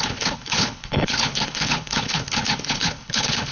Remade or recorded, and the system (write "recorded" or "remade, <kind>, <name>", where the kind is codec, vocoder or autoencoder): remade, codec, HILCodec